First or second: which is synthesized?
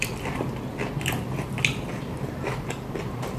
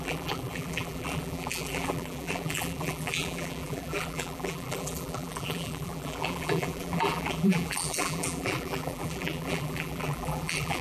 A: second